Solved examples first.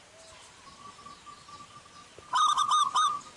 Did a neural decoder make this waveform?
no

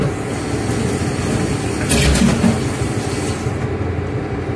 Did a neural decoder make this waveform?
no